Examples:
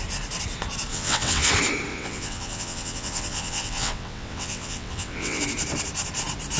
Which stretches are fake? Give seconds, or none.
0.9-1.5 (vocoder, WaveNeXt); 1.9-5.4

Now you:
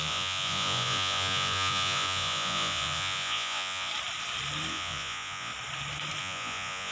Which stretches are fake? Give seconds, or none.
0.0-3.9 (vocoder, Vocos); 4.7-5.5; 6.2-6.9

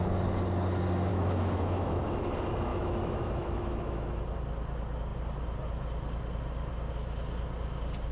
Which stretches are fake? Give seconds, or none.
1.1-2.3 (autoencoder, DAC-VAE); 2.7-4.2

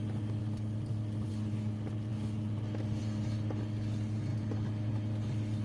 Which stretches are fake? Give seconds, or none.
none